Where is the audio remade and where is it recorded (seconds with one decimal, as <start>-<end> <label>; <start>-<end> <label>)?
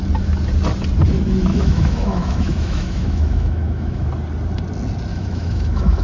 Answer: 0.0-1.5 recorded; 1.5-4.1 remade; 4.1-5.1 recorded; 5.1-6.0 remade